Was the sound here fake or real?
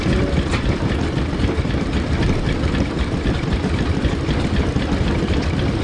real